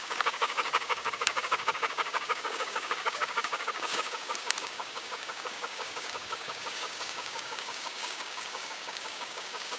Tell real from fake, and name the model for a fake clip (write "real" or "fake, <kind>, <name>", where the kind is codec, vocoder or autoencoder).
fake, codec, DAC